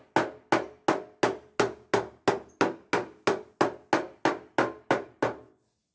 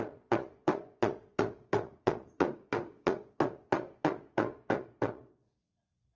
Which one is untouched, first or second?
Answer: first